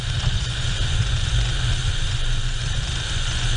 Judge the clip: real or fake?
fake